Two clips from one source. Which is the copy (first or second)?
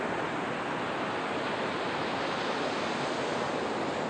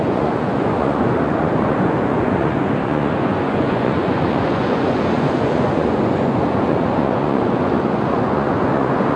second